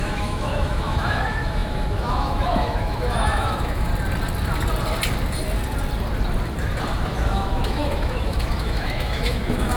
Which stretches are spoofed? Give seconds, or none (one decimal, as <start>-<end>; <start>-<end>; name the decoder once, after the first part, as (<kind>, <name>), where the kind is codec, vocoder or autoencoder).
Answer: 0.0-3.9 (autoencoder, DAC-VAE); 7.3-9.8